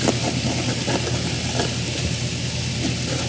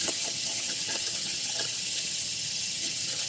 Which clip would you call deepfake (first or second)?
second